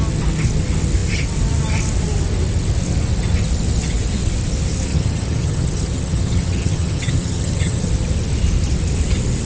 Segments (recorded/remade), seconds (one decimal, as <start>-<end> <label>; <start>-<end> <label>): 0.0-4.9 recorded; 4.9-7.9 remade; 7.9-9.4 recorded